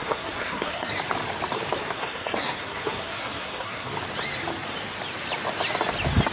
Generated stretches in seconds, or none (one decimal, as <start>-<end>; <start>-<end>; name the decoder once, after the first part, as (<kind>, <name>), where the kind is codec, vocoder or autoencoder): 0.0-0.9 (codec, SNAC); 1.8-3.9